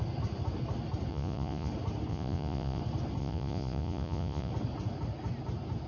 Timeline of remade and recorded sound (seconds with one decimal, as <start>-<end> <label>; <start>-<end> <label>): 0.0-1.1 recorded; 1.1-1.7 remade; 1.7-2.1 recorded; 2.1-2.8 remade; 2.8-3.2 recorded; 3.2-4.5 remade; 4.5-5.9 recorded